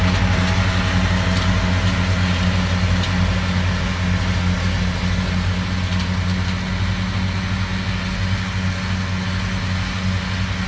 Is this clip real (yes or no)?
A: yes